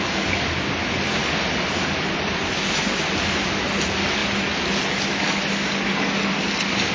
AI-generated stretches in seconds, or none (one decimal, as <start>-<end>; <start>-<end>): 1.2-2.9